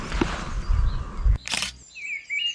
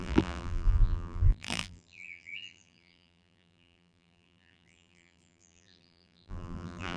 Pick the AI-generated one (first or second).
second